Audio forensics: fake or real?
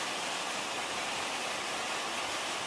real